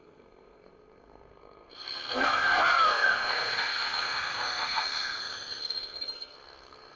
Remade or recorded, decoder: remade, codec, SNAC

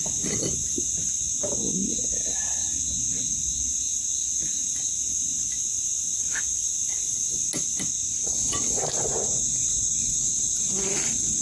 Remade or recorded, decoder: recorded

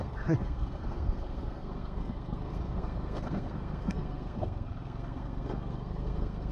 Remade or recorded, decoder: remade, codec, SNAC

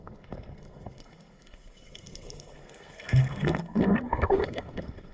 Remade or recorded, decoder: remade, codec, SNAC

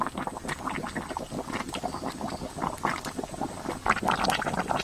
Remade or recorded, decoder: recorded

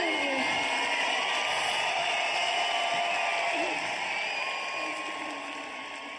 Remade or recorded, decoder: recorded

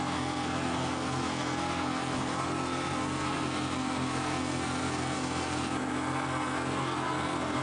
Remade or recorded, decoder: remade, codec, SNAC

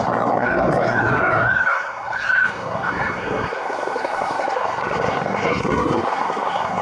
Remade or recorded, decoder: remade, codec, SNAC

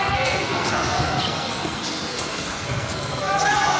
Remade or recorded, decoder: remade, codec, SNAC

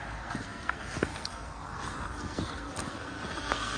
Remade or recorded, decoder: remade, codec, SNAC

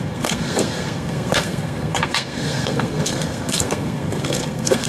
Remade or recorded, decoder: remade, codec, SNAC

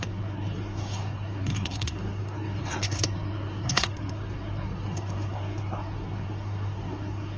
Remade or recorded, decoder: remade, codec, SNAC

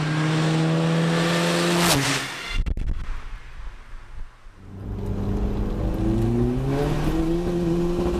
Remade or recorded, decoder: recorded